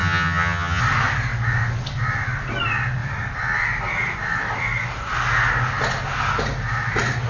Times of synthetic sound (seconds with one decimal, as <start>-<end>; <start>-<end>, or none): 0.0-0.8